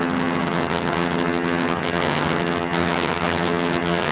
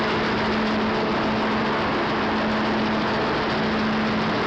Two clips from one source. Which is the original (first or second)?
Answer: second